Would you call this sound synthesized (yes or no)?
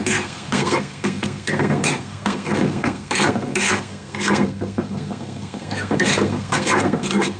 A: yes